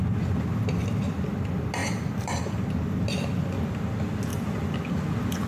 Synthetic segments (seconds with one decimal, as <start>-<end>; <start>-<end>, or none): none